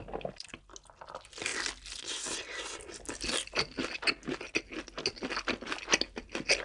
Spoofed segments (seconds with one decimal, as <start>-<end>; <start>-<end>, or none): none